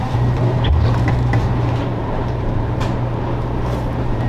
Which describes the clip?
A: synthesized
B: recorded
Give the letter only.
A